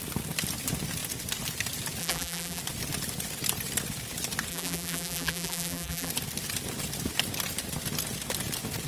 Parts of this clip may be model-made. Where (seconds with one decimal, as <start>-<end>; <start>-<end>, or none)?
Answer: 2.0-2.6; 4.5-6.1